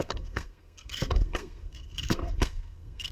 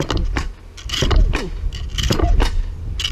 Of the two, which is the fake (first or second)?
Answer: first